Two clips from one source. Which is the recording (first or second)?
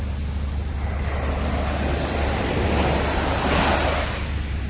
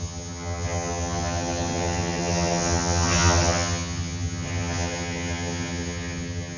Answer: first